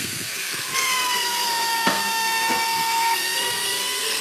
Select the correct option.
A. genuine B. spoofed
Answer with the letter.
B